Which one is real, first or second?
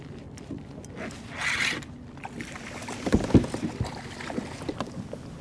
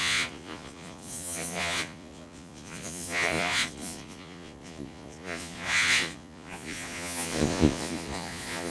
first